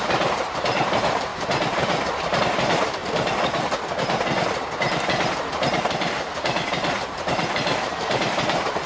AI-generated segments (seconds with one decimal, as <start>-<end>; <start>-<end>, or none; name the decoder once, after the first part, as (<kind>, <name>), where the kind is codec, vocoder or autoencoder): 0.0-1.3 (vocoder, BigVGAN v2); 2.4-3.0; 5.4-8.9